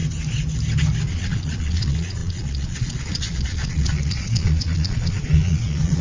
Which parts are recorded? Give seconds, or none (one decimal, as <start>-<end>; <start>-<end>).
0.0-1.1